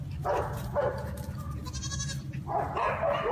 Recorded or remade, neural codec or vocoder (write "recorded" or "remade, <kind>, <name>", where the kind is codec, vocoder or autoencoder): recorded